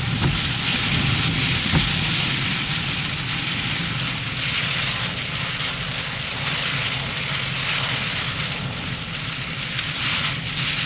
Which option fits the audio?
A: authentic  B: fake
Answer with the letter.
A